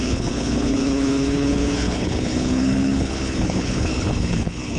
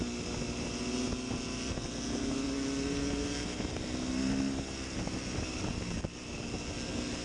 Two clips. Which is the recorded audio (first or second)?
second